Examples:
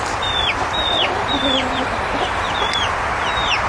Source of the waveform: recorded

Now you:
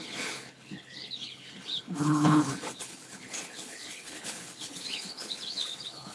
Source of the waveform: remade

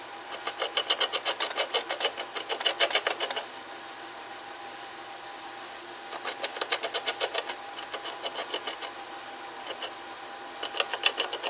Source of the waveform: recorded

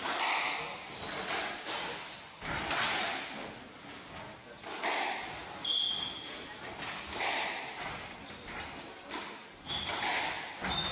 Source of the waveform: recorded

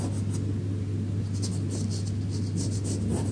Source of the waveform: recorded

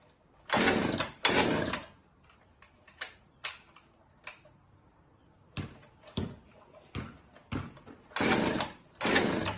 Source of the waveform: recorded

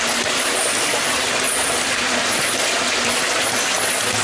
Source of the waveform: recorded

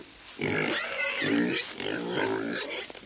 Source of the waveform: recorded